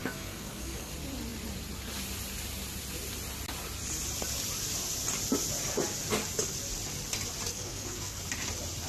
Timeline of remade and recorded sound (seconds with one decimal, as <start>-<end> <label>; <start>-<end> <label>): 0.0-0.9 remade; 0.9-7.5 recorded; 7.5-8.2 remade; 8.2-8.9 recorded